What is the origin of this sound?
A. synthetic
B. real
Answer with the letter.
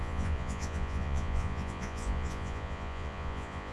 A